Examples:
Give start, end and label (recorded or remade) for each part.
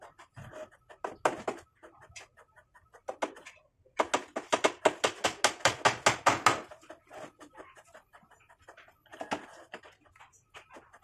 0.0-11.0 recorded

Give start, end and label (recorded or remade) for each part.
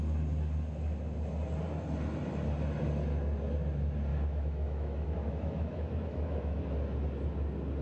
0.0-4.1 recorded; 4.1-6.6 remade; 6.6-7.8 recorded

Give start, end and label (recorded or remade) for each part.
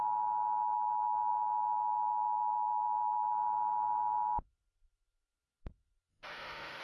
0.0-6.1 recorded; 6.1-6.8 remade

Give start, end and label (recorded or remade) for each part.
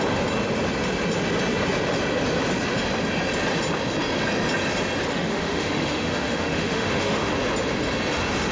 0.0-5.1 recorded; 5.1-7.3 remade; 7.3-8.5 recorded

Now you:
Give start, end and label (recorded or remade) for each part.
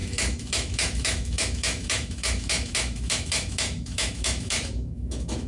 0.0-5.5 remade